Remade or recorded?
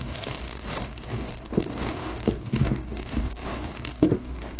remade